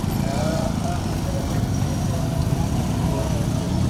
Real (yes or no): yes